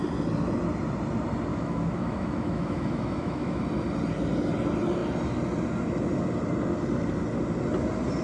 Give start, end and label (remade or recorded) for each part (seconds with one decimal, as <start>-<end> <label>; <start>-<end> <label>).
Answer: 0.0-1.5 recorded; 1.5-3.6 remade; 3.6-8.2 recorded